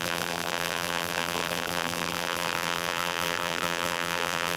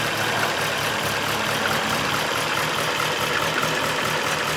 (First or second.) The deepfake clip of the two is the first